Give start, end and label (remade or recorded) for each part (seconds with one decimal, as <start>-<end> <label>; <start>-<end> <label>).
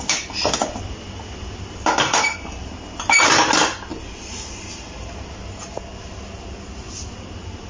0.0-7.7 recorded